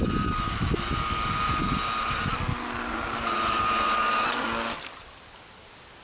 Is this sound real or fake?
real